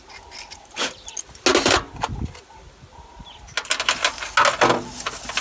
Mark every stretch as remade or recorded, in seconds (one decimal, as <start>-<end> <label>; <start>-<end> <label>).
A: 0.0-5.4 recorded